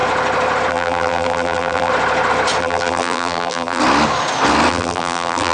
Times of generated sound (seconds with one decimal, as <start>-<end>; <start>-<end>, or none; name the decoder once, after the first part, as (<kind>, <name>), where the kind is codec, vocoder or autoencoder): 0.7-1.9 (vocoder, BigVGAN v2); 2.6-3.8; 4.7-5.5